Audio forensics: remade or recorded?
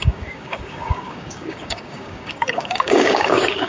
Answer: remade